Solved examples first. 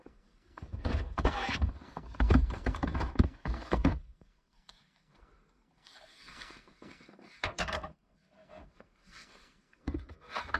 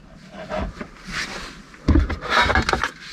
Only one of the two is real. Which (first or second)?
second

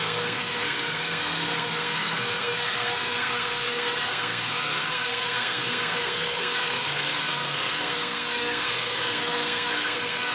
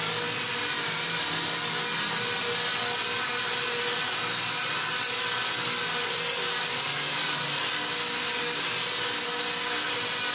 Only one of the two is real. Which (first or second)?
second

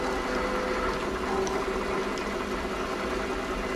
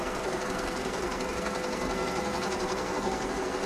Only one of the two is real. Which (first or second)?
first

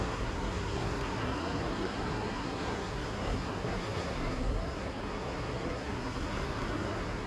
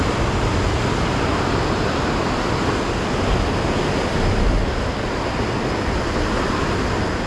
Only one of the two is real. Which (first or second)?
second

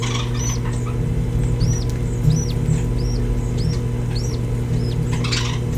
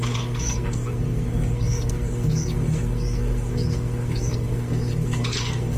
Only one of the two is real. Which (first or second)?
first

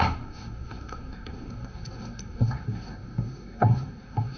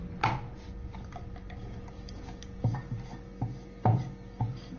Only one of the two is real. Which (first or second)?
second